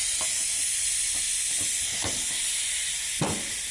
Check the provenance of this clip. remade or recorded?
recorded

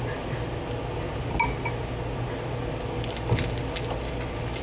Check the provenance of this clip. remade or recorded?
recorded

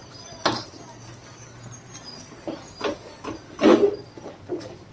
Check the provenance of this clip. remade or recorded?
recorded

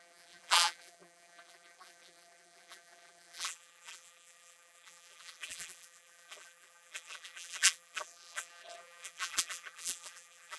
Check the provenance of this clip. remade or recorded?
remade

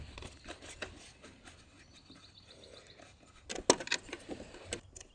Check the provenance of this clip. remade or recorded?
recorded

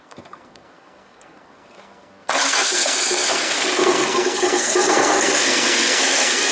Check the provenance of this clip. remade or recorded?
remade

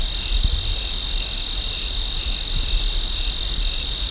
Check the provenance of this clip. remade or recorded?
recorded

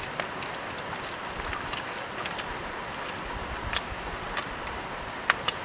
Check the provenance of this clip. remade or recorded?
recorded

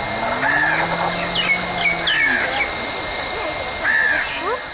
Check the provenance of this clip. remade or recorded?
recorded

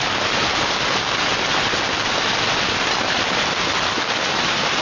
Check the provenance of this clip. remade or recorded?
recorded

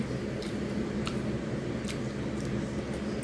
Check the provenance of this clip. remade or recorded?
recorded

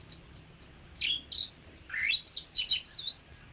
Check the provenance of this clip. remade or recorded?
recorded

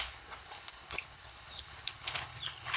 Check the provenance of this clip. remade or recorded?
remade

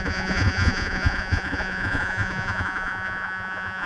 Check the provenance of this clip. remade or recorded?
remade